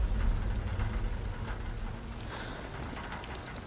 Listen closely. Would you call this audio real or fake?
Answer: real